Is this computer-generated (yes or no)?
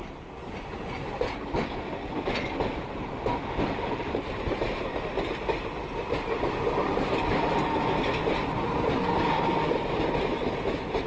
no